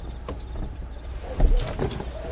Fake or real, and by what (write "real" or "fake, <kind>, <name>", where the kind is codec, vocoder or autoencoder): real